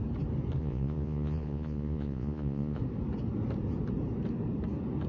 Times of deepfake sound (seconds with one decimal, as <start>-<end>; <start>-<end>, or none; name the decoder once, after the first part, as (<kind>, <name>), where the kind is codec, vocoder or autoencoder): 0.6-2.8 (vocoder, Vocos)